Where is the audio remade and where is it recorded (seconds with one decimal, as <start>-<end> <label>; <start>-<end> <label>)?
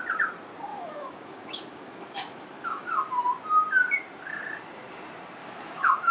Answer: 0.0-0.7 recorded; 0.7-2.9 remade; 2.9-5.4 recorded; 5.4-6.1 remade